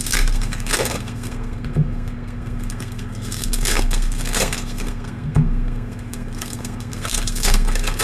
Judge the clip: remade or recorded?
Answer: remade